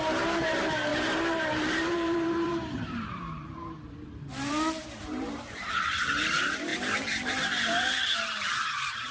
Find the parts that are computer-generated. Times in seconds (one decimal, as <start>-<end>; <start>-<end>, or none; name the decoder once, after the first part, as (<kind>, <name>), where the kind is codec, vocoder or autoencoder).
0.0-9.1 (vocoder, BigVGAN v2)